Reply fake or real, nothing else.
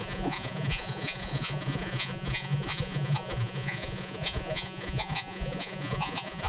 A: fake